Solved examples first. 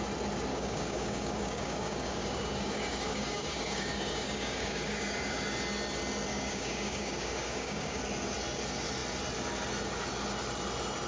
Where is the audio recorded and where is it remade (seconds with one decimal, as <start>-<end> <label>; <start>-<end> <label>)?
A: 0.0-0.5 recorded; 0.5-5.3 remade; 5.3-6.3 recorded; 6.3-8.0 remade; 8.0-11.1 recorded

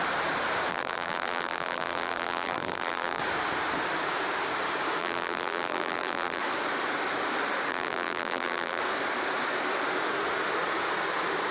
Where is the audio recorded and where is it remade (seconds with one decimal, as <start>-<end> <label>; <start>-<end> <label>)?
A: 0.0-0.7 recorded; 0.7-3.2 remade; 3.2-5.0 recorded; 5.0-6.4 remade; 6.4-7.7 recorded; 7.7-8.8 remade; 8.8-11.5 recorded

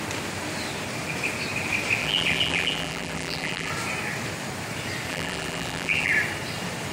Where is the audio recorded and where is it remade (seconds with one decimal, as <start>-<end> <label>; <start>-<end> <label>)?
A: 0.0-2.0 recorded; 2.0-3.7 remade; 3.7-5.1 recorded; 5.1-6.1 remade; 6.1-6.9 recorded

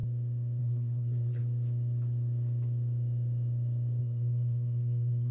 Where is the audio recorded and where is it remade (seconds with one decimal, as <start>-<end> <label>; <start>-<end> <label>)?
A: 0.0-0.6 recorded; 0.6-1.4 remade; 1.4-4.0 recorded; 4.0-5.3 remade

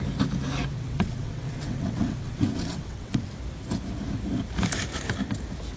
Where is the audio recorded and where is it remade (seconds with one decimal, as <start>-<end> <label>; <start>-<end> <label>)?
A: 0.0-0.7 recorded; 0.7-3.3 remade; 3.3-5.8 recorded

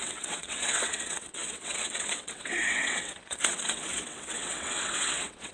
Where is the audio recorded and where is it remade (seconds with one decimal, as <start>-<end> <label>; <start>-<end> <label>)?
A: 0.0-5.5 remade

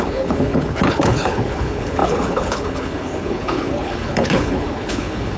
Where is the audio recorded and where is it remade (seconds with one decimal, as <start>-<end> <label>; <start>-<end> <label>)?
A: 0.0-5.4 remade